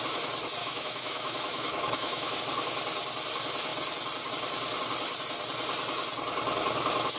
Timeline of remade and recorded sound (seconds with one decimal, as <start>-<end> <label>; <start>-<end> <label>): 0.0-0.6 recorded; 0.6-2.4 remade; 2.4-7.2 recorded